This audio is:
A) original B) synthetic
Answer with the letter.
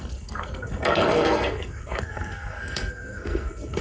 B